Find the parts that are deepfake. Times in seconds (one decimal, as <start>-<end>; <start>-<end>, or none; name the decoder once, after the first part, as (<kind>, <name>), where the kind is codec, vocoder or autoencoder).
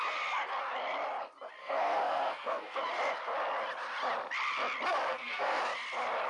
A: 1.6-2.8 (codec, SNAC); 5.1-5.6